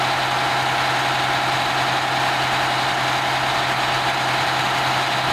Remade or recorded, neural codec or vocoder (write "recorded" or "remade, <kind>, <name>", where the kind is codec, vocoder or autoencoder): recorded